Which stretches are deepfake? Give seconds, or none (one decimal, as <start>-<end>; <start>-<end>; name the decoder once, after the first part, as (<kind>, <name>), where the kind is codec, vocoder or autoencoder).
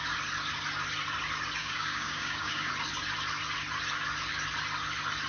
1.6-2.7 (codec, DAC)